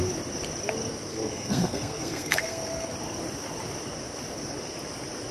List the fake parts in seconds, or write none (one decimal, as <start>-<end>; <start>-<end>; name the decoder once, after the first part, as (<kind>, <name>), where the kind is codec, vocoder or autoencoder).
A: 1.1-2.9 (codec, SNAC)